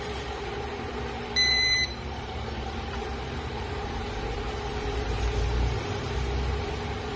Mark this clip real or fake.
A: fake